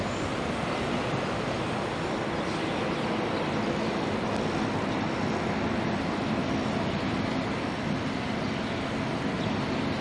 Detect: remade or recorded recorded